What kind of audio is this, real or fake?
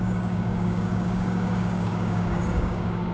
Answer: fake